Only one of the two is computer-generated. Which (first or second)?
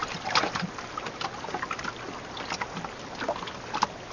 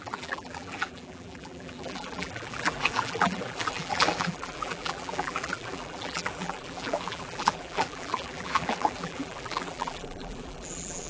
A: second